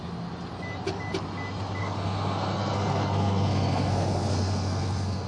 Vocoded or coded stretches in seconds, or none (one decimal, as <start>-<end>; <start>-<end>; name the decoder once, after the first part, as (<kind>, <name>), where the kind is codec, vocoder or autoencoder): 1.8-5.3 (codec, SNAC)